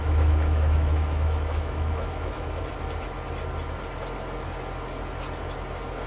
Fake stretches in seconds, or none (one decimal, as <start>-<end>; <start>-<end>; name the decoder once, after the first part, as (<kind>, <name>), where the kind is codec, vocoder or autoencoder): 0.0-2.6 (autoencoder, DAC-VAE)

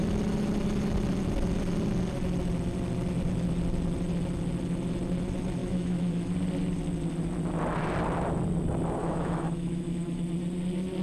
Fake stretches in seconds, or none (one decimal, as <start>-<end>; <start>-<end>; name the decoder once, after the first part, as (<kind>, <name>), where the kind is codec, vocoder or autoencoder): 5.6-6.3 (autoencoder, DAC-VAE); 9.0-10.2

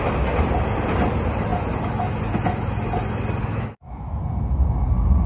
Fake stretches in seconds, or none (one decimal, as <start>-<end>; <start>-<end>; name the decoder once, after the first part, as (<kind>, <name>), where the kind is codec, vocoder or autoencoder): 3.4-4.2 (autoencoder, DAC-VAE)